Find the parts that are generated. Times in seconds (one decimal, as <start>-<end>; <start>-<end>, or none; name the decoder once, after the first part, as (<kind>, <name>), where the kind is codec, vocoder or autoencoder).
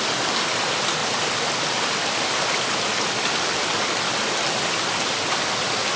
none